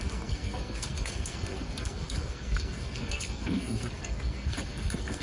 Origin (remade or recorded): remade